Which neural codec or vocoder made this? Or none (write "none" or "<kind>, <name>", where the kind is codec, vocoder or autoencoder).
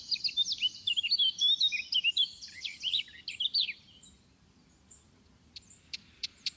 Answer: vocoder, BigVGAN v2